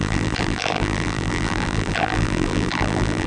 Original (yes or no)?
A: no